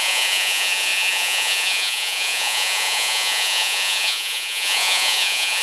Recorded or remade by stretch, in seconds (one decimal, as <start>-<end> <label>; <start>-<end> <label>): 0.0-5.6 remade